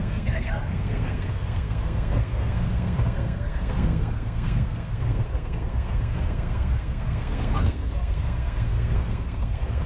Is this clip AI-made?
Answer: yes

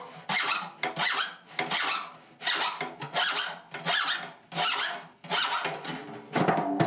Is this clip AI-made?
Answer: no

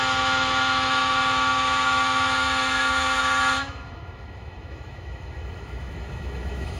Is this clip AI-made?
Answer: yes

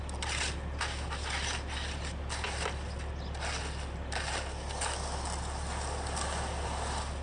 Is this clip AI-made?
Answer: no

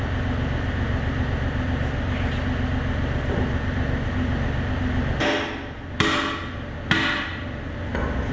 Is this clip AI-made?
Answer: no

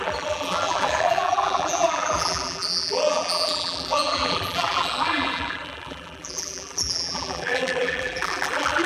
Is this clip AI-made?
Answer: yes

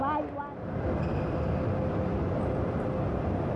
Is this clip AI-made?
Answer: no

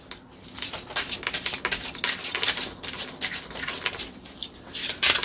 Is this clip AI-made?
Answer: no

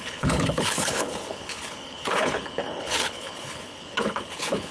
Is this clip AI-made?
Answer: yes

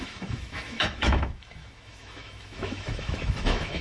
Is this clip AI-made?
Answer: yes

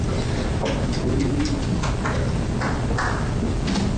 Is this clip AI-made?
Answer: no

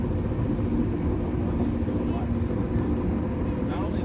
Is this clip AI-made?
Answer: yes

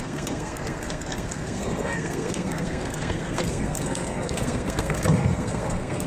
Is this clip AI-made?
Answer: yes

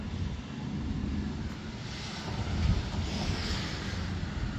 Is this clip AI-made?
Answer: no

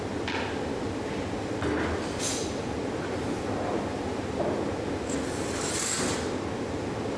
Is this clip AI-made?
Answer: no